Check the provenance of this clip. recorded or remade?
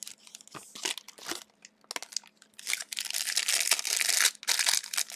recorded